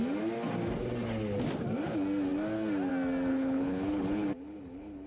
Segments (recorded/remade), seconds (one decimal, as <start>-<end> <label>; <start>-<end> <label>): 0.0-3.3 recorded; 3.3-5.1 remade